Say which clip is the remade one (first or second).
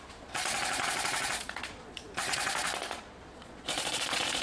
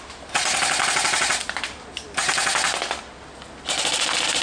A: first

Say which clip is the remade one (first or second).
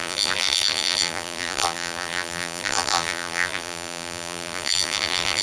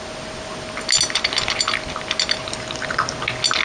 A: first